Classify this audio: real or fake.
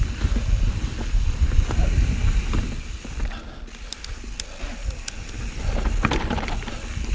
real